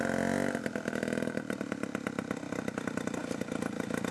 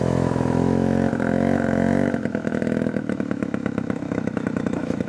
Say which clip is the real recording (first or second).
first